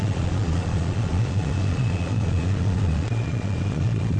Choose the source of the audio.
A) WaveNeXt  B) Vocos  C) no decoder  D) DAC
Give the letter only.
B